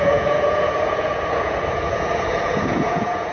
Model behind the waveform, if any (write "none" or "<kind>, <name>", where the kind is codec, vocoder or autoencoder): vocoder, Vocos